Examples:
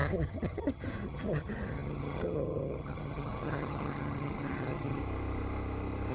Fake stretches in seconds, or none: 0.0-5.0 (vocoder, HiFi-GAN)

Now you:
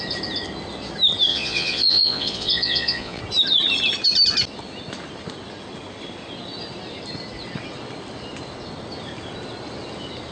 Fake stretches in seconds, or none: 1.3-3.2 (vocoder, Vocos)

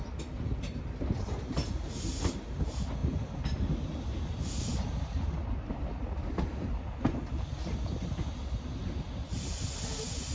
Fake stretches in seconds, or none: none

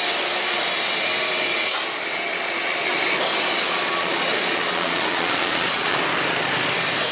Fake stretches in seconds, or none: 2.3-3.0 (vocoder, Vocos); 3.7-6.0

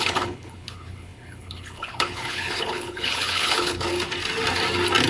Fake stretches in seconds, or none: 0.0-3.9 (codec, HILCodec)

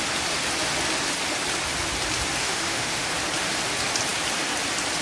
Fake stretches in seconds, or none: 2.4-3.1 (autoencoder, DAC-VAE)

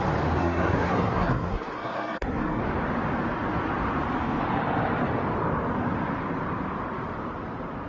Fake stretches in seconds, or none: 0.4-2.6 (codec, SNAC)

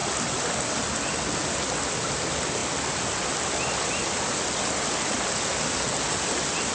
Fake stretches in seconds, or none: none